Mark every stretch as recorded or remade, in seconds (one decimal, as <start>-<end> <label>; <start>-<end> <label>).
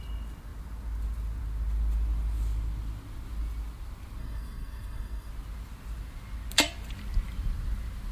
0.0-4.2 recorded; 4.2-5.3 remade; 5.3-8.1 recorded